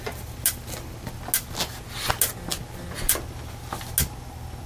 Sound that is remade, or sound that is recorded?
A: recorded